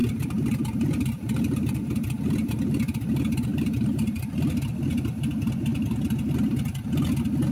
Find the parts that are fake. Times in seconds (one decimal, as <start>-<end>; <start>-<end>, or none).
0.0-1.8; 3.5-4.3